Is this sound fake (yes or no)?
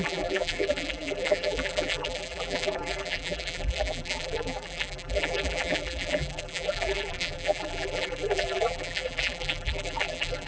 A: yes